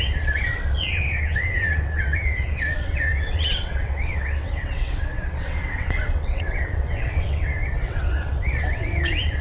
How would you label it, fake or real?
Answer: fake